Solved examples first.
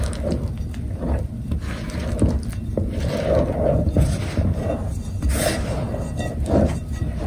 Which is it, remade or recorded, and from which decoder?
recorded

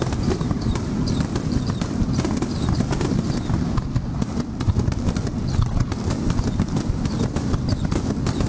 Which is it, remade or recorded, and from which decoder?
recorded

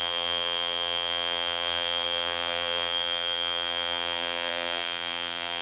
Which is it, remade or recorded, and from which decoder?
remade, vocoder, BigVGAN v2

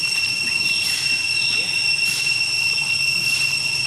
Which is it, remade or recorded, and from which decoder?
recorded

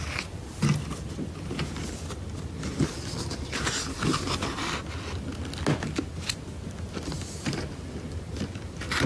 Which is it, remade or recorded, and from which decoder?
recorded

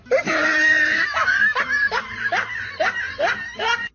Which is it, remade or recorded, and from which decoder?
remade, vocoder, BigVGAN v2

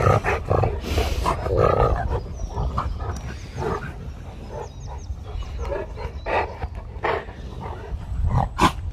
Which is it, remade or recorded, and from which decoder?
recorded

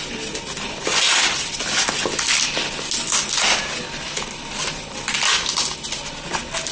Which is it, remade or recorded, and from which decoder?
recorded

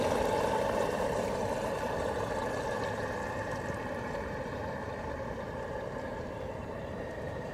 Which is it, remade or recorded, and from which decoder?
remade, vocoder, BigVGAN v2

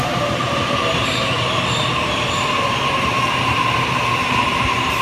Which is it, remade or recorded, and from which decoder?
remade, vocoder, BigVGAN v2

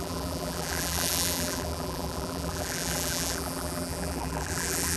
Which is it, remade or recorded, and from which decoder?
remade, vocoder, BigVGAN v2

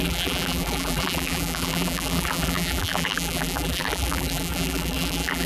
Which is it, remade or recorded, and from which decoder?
remade, vocoder, BigVGAN v2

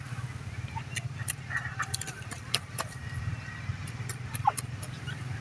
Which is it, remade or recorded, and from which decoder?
remade, vocoder, BigVGAN v2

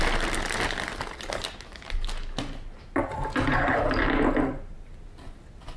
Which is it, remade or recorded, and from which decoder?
recorded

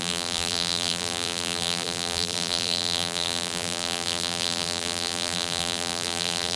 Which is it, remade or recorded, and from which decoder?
remade, vocoder, BigVGAN v2